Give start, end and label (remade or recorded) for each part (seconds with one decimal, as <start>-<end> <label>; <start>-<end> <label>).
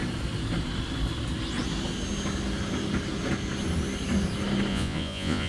0.0-4.7 recorded; 4.7-5.5 remade